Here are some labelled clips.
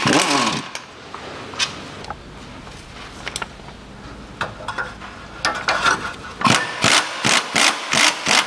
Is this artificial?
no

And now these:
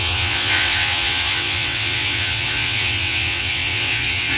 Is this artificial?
yes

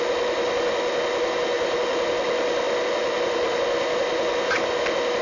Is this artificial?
no